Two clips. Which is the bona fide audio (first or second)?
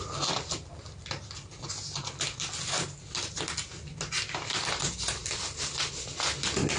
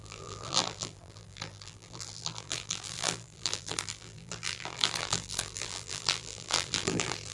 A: first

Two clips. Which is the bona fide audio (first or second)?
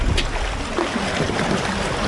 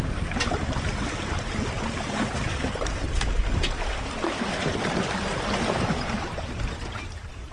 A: first